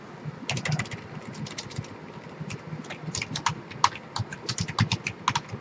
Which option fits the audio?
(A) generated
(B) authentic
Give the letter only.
B